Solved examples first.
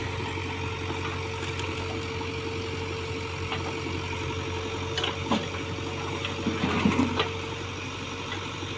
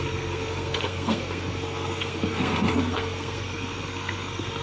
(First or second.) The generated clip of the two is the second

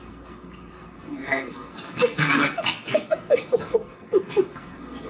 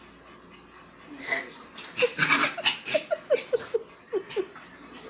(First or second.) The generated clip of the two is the first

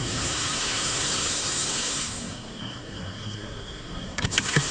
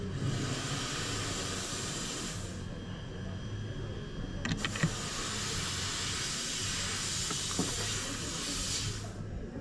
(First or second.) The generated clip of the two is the first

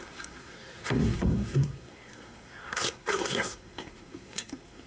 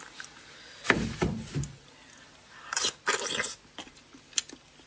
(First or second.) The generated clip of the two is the first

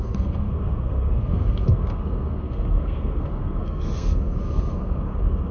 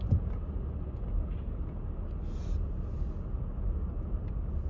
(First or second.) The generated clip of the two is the first